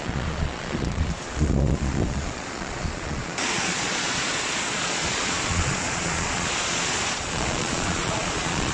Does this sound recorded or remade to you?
remade